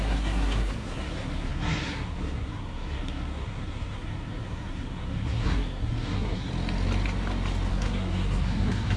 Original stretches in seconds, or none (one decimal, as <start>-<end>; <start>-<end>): 6.5-7.7